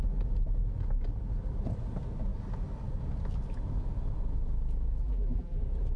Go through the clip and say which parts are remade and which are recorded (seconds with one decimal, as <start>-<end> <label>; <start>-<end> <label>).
0.0-5.0 recorded; 5.0-5.6 remade; 5.6-6.0 recorded